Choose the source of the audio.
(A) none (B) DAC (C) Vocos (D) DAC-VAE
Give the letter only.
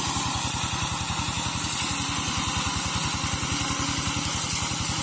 A